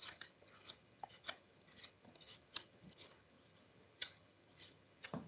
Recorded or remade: remade